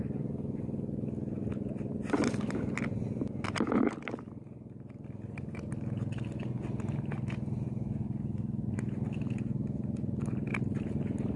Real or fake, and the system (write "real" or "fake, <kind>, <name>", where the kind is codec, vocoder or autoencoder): real